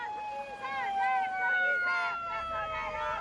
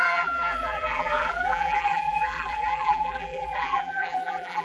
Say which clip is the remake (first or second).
second